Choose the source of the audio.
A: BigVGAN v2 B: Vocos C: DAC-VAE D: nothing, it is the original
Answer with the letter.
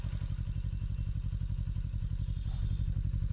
D